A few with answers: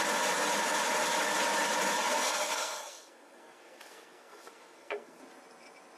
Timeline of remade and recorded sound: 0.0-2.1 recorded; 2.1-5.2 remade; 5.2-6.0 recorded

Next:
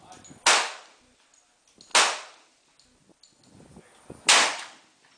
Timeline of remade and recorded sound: 0.0-5.2 recorded

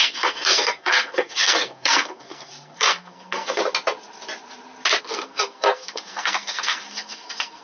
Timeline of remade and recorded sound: 0.0-3.6 remade; 3.6-5.0 recorded; 5.0-7.6 remade